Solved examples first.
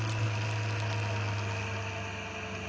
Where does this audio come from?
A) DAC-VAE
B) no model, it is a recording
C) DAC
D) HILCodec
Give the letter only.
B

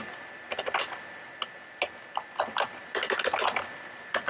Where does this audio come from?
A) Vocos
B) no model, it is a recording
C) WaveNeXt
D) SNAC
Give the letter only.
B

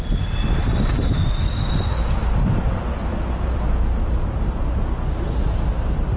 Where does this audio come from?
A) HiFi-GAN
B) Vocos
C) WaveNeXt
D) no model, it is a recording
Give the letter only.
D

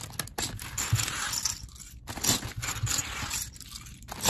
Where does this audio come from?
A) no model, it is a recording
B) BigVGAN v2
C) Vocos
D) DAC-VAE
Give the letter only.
A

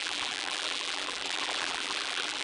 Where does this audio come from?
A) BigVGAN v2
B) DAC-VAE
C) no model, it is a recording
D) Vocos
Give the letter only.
A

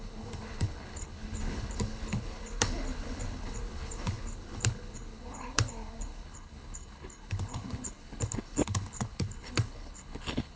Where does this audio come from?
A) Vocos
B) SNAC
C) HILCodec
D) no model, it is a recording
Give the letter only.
C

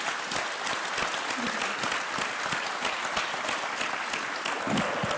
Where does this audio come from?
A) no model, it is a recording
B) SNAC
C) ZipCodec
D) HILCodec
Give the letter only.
A